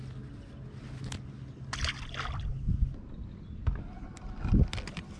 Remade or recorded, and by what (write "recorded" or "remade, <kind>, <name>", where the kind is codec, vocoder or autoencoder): recorded